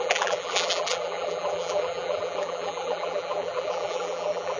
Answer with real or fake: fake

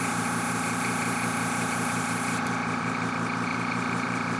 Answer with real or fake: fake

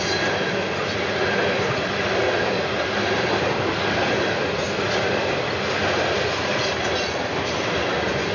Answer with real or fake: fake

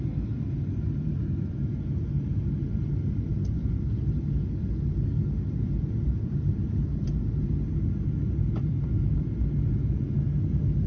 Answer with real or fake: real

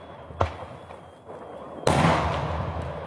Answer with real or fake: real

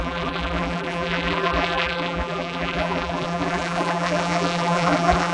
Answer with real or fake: fake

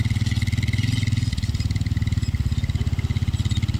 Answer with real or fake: real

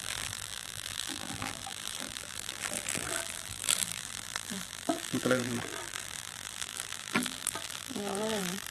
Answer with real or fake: fake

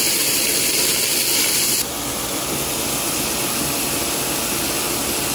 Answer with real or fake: real